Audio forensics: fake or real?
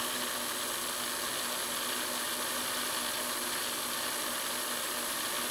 real